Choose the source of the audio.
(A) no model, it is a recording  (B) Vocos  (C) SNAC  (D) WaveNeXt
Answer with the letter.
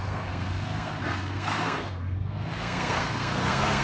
C